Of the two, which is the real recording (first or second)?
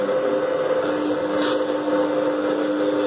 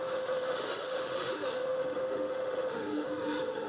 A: first